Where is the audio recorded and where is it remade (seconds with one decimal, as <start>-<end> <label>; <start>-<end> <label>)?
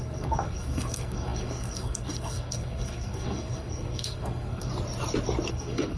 0.0-4.7 remade; 4.7-5.5 recorded; 5.5-6.0 remade